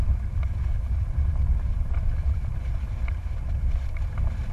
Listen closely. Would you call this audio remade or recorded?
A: remade